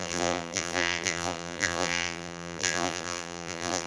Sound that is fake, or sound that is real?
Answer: fake